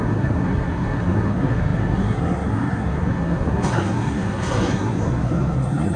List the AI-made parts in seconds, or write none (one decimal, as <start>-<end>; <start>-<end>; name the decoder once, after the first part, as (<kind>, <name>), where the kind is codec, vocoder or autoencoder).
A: 0.0-6.0 (codec, SNAC)